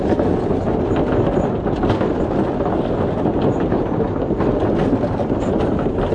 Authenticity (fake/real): real